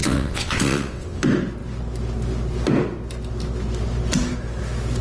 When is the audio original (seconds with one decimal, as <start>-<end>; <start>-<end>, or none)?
1.2-5.0